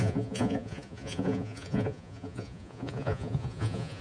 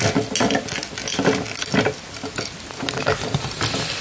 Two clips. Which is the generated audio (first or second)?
first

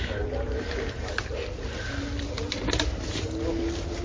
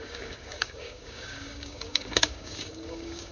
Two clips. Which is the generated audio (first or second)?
second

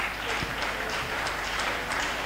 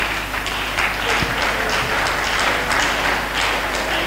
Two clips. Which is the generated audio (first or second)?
first